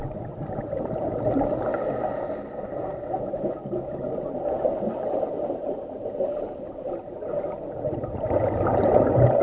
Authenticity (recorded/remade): recorded